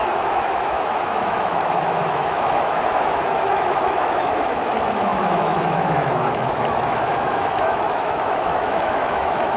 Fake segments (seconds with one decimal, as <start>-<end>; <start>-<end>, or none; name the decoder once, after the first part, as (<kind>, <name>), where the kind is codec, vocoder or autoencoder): 0.0-9.6 (autoencoder, DAC-VAE)